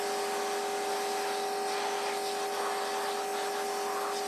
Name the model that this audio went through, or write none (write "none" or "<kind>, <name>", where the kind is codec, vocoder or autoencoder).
none